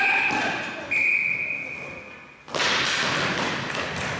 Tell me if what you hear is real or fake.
real